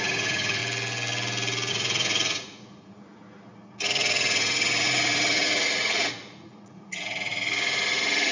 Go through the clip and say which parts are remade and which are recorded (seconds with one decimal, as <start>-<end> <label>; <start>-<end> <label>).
0.0-0.6 remade; 0.6-1.7 recorded; 1.7-8.3 remade

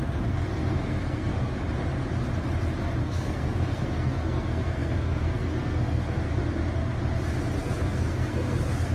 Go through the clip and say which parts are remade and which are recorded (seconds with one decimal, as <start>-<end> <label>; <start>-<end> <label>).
0.0-1.5 remade; 1.5-3.0 recorded; 3.0-6.4 remade; 6.4-7.6 recorded; 7.6-8.9 remade

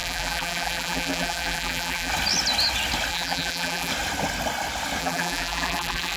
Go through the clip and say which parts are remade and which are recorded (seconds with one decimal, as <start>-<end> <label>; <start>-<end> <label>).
0.0-2.1 remade; 2.1-3.1 recorded; 3.1-3.9 remade; 3.9-5.0 recorded; 5.0-6.2 remade

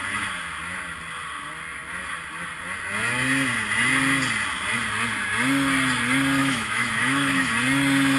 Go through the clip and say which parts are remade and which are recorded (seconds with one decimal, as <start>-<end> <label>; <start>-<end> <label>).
0.0-6.4 recorded; 6.4-7.5 remade; 7.5-8.2 recorded

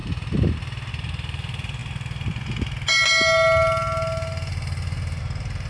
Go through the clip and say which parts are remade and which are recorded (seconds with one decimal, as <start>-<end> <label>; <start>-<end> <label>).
0.0-5.7 recorded

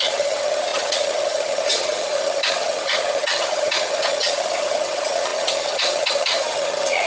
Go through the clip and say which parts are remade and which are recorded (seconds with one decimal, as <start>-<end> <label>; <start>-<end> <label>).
0.0-7.1 remade